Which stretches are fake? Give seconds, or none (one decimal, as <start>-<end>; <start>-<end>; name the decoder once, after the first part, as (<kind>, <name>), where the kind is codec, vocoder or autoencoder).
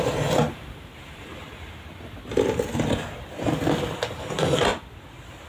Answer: 0.0-1.4 (vocoder, BigVGAN v2); 4.1-4.7